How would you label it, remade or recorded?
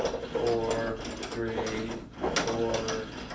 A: recorded